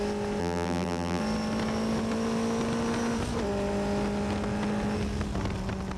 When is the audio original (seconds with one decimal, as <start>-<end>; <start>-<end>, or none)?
0.0-0.4; 1.2-6.0